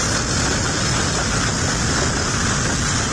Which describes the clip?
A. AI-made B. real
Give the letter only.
B